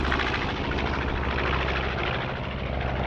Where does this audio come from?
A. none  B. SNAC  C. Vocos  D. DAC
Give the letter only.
A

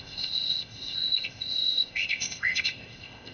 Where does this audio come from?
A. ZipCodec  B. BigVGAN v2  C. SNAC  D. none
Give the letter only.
A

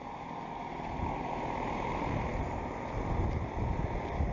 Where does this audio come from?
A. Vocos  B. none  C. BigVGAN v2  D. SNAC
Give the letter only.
C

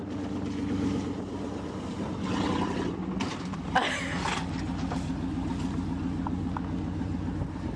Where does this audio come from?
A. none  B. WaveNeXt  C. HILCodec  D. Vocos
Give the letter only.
A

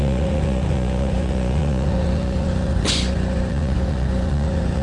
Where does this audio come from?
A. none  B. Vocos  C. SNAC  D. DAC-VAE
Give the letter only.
B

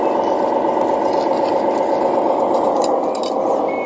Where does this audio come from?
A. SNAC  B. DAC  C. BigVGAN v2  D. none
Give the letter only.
D